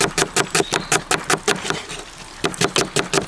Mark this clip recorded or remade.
recorded